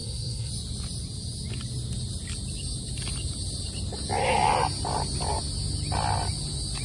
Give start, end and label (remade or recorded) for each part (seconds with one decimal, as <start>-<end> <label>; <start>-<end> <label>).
0.0-0.5 remade; 0.5-6.8 recorded